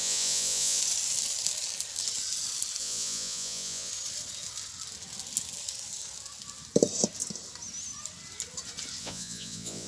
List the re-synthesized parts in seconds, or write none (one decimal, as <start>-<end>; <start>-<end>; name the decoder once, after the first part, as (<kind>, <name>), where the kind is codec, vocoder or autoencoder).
0.0-0.8 (vocoder, Vocos); 2.8-3.9; 9.0-9.9